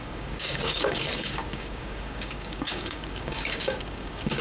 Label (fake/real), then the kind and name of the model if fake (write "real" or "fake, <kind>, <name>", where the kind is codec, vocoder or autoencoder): fake, codec, DAC